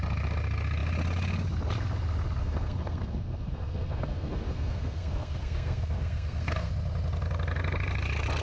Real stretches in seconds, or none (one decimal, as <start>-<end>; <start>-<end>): 0.0-2.4; 6.7-8.4